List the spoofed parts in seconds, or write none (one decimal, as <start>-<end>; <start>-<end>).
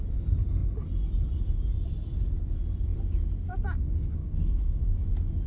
4.2-5.1